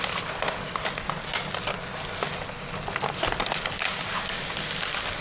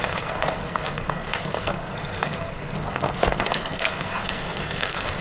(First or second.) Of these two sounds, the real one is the first